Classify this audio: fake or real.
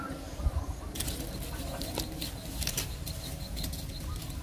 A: real